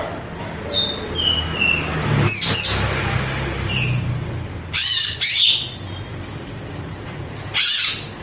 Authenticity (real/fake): real